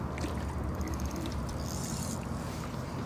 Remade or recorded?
recorded